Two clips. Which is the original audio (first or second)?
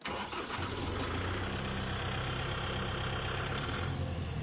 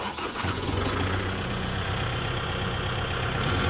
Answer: first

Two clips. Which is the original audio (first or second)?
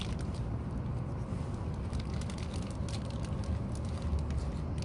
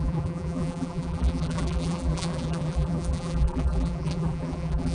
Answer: first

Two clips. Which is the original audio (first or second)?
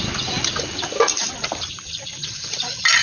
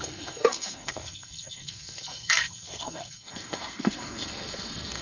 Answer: first